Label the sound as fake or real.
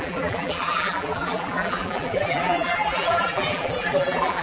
fake